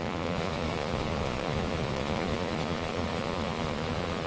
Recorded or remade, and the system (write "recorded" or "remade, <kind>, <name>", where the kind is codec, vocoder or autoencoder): remade, vocoder, Vocos